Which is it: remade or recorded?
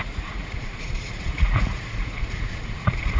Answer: remade